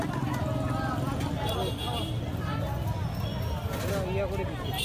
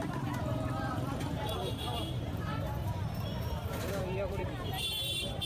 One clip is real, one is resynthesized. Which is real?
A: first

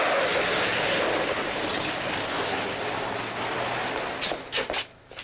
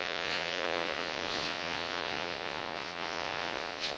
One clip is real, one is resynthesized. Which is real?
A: first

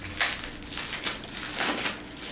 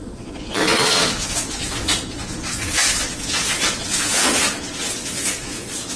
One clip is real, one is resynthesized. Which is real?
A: first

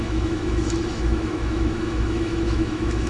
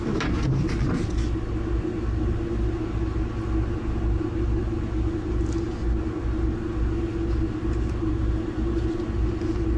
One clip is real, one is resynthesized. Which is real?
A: second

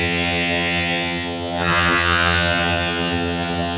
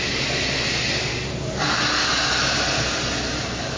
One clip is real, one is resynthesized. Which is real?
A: second